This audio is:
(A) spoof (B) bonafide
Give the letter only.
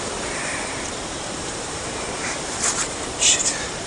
A